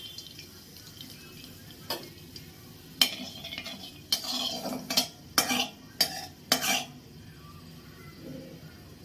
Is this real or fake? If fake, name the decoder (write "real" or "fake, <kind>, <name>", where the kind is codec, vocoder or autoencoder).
real